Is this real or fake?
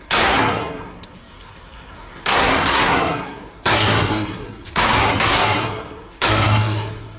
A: fake